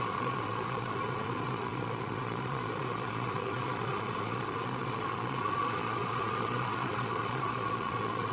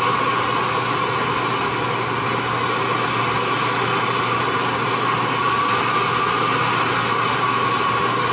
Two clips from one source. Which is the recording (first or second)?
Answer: second